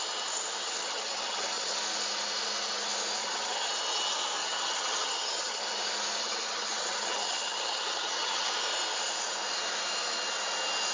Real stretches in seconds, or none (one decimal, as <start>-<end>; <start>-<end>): 0.0-0.6; 1.8-3.2; 3.7-4.4; 5.6-6.2; 8.5-10.9